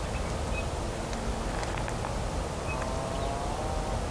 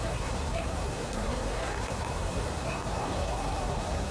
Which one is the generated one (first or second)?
second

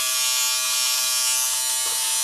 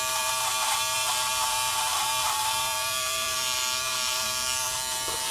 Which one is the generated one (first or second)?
second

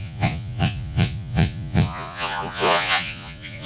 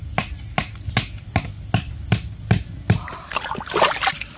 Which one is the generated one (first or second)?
first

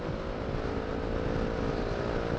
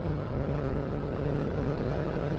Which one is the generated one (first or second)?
second